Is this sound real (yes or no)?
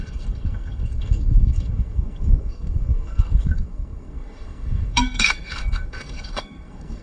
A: no